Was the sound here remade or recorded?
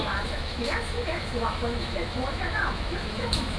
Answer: remade